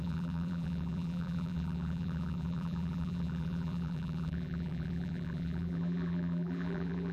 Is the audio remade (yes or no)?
yes